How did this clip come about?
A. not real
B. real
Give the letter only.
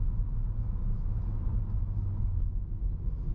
B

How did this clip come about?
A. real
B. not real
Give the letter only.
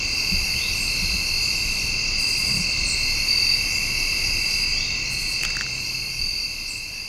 A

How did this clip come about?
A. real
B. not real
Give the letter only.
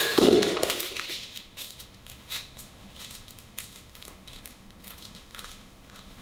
B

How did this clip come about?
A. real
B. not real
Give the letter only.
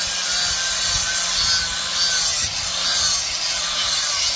A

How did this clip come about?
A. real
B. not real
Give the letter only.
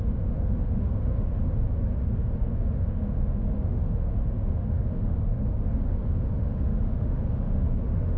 B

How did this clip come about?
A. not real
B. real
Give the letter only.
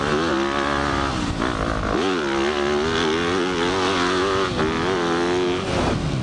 B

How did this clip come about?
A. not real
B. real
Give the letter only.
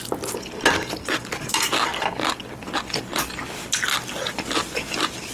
B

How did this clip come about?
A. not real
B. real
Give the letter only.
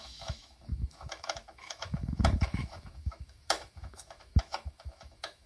A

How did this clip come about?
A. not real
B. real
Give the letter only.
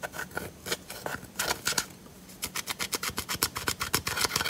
B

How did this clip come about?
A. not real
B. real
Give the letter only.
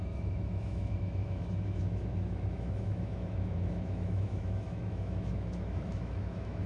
A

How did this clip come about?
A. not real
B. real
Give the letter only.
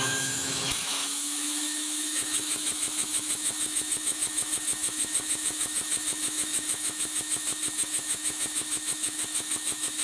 A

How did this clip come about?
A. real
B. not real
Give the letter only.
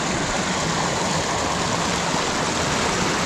A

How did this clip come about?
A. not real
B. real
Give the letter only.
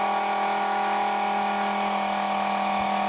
A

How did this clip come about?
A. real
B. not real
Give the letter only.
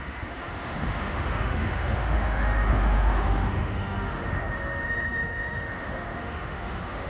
B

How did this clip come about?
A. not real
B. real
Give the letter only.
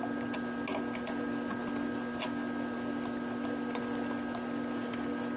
B